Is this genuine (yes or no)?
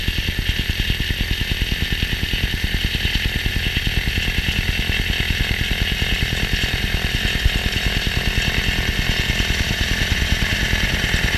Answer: yes